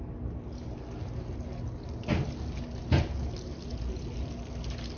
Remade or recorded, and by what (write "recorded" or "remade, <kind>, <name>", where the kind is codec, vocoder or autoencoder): recorded